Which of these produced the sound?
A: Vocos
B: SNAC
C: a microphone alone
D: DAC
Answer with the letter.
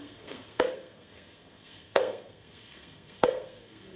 B